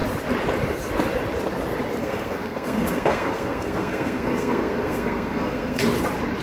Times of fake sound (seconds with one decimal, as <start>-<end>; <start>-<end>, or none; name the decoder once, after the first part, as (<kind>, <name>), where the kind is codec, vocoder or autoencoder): 2.0-5.8 (codec, SNAC)